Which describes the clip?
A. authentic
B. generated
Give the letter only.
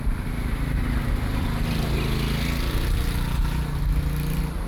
A